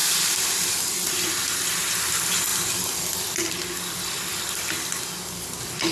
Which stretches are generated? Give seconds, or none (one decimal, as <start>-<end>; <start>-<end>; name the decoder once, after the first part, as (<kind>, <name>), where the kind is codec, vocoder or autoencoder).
0.0-1.3 (vocoder, BigVGAN v2); 2.5-5.0